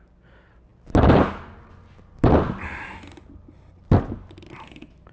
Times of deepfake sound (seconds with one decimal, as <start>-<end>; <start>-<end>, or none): none